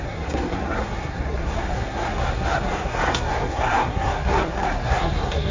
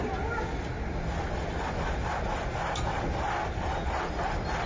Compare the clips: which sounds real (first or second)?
second